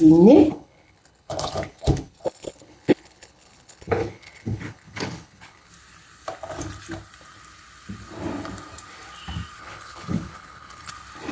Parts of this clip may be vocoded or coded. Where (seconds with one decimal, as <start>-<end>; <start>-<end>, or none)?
0.5-5.7; 9.6-10.9